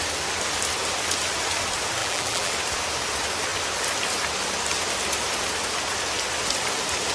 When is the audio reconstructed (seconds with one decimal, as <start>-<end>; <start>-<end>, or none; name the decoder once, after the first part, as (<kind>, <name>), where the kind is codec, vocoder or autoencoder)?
2.0-2.5 (vocoder, BigVGAN v2)